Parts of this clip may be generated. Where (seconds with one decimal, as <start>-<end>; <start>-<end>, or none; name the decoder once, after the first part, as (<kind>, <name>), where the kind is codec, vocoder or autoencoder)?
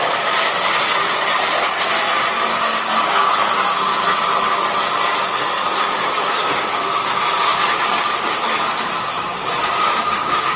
2.5-4.0 (codec, DAC); 5.6-10.6